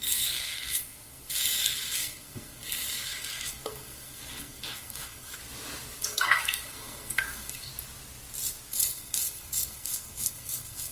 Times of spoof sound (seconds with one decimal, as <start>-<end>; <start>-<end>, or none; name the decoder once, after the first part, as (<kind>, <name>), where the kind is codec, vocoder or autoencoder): 0.0-5.4 (codec, SNAC); 6.0-7.7; 8.7-10.9